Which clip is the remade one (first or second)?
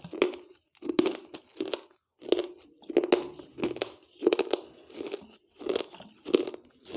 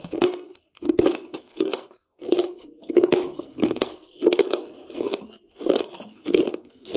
second